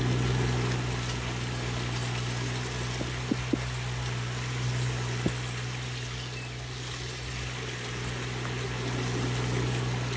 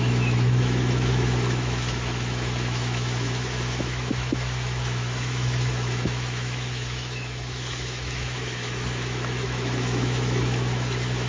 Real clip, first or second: first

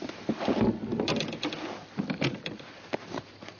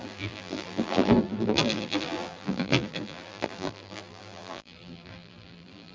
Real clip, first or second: first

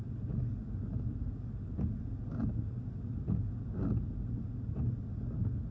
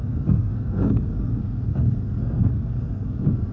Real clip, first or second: first